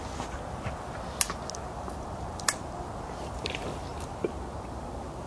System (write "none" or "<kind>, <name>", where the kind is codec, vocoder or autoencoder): none